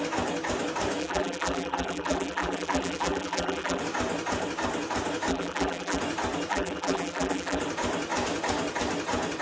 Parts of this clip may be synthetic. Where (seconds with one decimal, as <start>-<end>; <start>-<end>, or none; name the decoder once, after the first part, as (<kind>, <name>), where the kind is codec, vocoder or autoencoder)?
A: 1.0-3.8 (vocoder, BigVGAN v2); 5.3-6.0; 6.5-7.6